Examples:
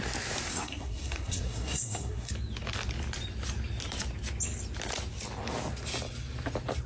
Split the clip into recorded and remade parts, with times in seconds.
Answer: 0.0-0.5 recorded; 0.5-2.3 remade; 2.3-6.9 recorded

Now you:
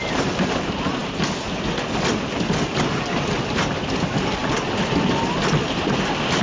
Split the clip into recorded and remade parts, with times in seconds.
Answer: 0.0-6.4 recorded

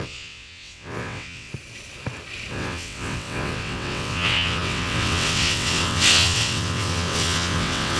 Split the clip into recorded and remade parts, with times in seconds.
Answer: 0.0-1.5 remade; 1.5-2.5 recorded; 2.5-8.0 remade